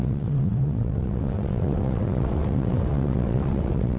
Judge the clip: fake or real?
fake